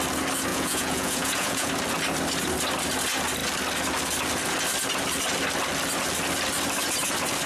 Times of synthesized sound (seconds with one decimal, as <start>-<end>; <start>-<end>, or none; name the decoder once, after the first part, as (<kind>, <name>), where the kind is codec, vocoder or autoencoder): 0.5-1.7 (vocoder, Vocos)